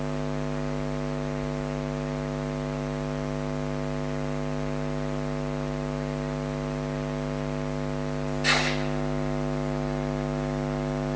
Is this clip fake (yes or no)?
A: no